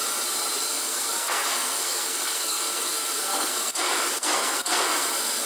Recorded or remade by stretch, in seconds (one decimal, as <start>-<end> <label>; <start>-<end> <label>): 0.0-0.6 recorded; 0.6-5.5 remade